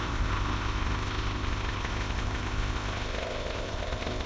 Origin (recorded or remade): remade